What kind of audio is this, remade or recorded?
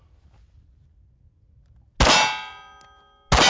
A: recorded